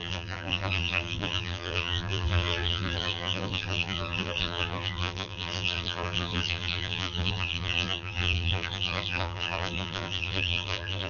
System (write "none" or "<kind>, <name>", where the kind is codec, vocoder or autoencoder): vocoder, BigVGAN v2